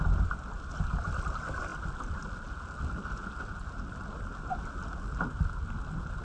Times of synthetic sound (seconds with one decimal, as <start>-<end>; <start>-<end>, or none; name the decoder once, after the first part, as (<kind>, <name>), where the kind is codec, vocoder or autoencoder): none